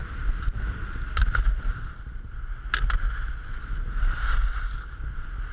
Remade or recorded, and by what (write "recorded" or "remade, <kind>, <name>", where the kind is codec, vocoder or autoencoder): recorded